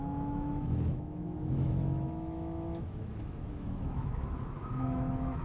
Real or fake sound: fake